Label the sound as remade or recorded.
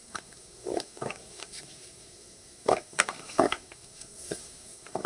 remade